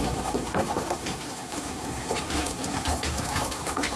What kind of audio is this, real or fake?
fake